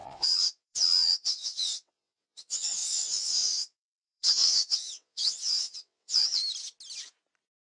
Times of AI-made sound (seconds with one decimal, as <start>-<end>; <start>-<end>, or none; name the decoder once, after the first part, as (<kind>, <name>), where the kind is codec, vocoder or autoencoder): 0.0-6.4 (vocoder, WaveNeXt)